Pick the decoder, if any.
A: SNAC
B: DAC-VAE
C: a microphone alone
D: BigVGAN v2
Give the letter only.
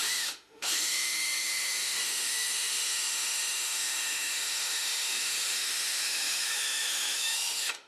B